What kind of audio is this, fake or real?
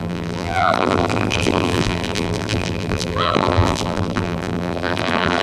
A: fake